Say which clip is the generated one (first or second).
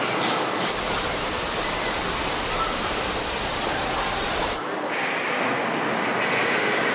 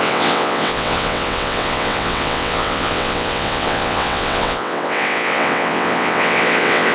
second